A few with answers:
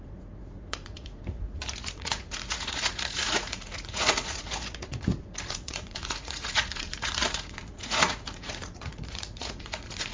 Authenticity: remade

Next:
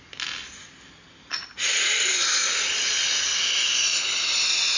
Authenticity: recorded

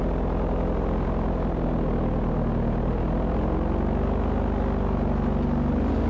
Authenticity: recorded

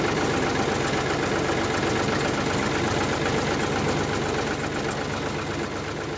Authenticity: recorded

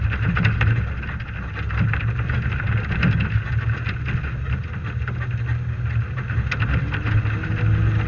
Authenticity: recorded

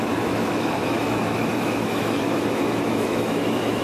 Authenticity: remade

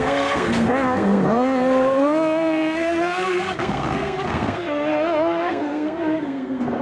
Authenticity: remade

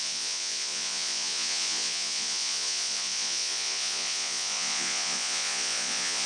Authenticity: remade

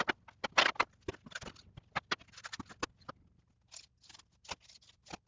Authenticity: recorded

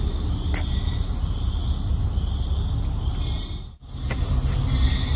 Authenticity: recorded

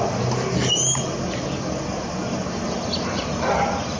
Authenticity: recorded